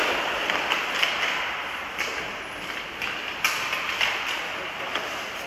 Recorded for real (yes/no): yes